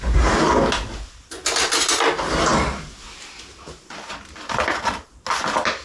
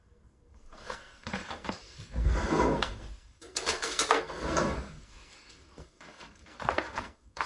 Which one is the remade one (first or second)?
second